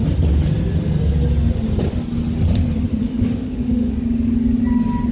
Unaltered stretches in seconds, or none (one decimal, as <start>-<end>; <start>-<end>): 0.0-3.0; 3.9-5.1